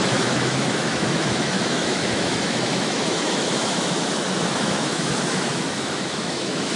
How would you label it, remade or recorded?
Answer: remade